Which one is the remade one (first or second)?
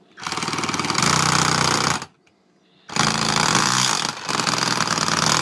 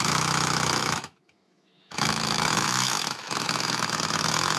second